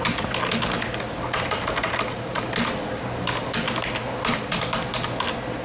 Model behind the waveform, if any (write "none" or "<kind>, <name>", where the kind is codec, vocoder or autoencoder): none